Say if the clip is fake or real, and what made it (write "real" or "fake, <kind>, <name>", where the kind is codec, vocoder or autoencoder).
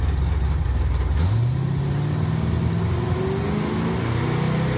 real